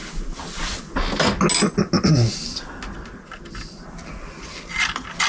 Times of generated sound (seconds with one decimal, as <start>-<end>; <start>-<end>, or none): none